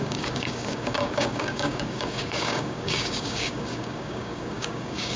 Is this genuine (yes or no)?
no